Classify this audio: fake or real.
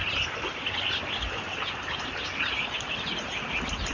real